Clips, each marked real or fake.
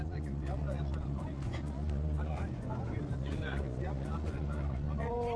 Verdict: fake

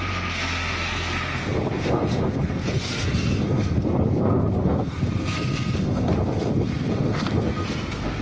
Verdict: fake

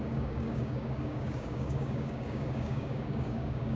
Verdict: fake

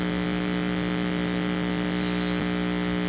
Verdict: real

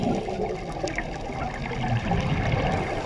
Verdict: real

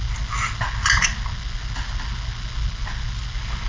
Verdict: real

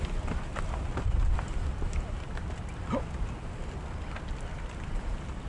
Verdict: real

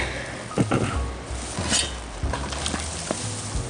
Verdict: real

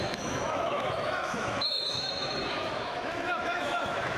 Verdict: fake